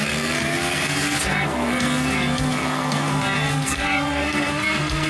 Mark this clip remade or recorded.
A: remade